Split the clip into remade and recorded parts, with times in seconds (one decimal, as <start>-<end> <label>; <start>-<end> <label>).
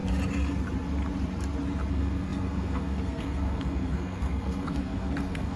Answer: 0.0-1.9 recorded; 1.9-5.6 remade